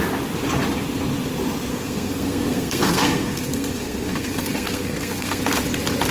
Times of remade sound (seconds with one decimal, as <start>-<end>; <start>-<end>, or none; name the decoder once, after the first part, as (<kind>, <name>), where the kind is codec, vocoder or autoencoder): 1.7-5.4 (codec, SNAC)